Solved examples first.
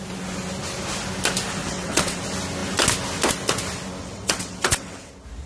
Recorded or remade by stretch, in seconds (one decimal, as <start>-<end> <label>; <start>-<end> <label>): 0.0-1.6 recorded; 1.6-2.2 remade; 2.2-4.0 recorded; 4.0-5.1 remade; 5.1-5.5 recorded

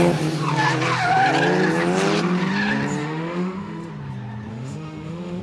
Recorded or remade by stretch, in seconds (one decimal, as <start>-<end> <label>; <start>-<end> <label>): 0.0-3.0 recorded; 3.0-3.9 remade; 3.9-4.5 recorded; 4.5-5.4 remade

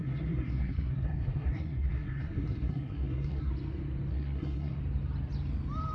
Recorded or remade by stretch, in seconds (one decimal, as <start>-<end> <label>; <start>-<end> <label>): 0.0-3.5 remade; 3.5-4.1 recorded; 4.1-4.8 remade; 4.8-5.9 recorded

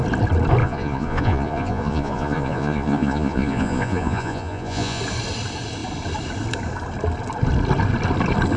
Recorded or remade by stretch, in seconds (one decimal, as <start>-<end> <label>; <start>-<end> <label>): 0.0-0.6 recorded; 0.6-5.0 remade; 5.0-8.6 recorded

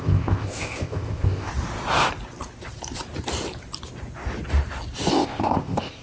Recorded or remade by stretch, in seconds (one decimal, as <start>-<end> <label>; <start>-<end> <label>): 0.0-1.5 remade; 1.5-5.1 recorded; 5.1-6.0 remade

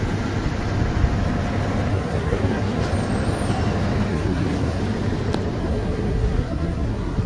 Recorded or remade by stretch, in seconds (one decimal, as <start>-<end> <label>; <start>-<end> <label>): 0.0-1.9 recorded; 1.9-2.8 remade; 2.8-4.1 recorded; 4.1-4.8 remade; 4.8-5.6 recorded; 5.6-7.3 remade

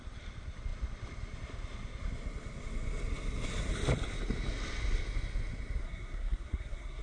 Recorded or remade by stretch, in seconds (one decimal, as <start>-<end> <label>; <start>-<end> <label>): 0.0-5.8 recorded; 5.8-7.0 remade

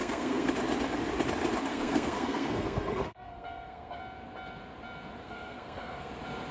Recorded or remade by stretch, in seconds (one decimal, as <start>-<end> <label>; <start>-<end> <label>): 0.0-0.5 remade; 0.5-1.7 recorded; 1.7-4.0 remade; 4.0-5.2 recorded; 5.2-6.1 remade; 6.1-6.5 recorded